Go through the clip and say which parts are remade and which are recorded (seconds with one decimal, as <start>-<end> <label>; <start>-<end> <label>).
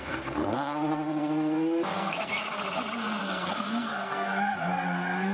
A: 0.0-2.3 remade; 2.3-3.2 recorded; 3.2-5.3 remade